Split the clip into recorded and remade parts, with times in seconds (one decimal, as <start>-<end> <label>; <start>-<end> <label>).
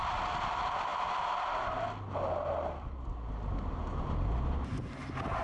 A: 0.0-5.4 recorded